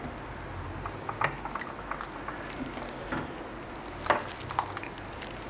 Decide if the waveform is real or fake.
real